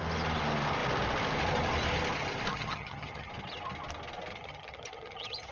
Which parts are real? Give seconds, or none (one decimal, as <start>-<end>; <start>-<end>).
0.0-2.5; 3.3-4.3